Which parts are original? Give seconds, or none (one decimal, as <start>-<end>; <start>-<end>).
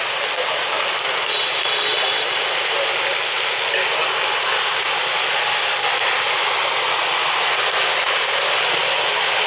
0.0-9.5